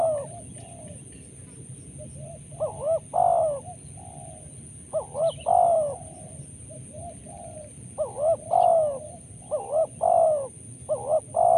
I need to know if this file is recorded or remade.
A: recorded